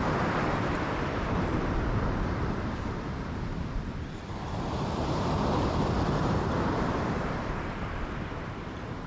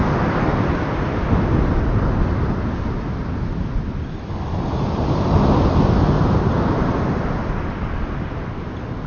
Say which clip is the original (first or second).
second